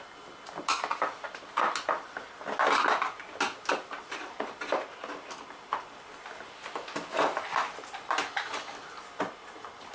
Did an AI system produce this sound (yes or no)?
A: no